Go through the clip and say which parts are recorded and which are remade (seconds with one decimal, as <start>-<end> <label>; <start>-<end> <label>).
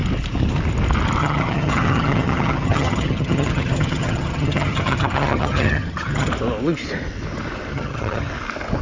0.0-1.2 recorded; 1.2-6.3 remade; 6.3-7.7 recorded; 7.7-8.3 remade; 8.3-8.8 recorded